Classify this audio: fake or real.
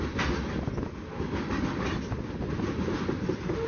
real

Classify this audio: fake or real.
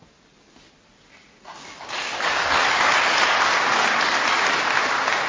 real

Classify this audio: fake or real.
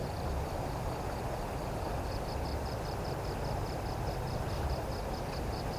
real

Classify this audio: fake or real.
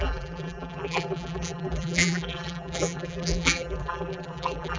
fake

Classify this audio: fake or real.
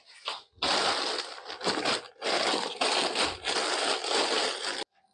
real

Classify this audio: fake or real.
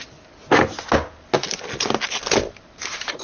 real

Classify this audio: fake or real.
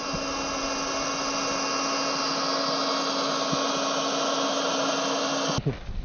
real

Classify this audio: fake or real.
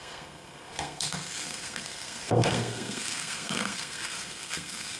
fake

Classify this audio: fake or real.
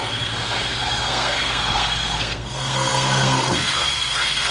fake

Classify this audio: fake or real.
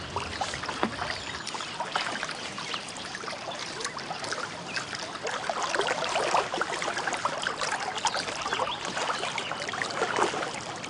real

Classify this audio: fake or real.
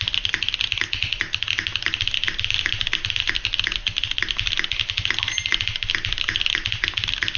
real